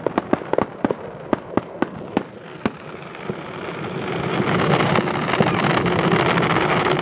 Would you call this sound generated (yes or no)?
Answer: no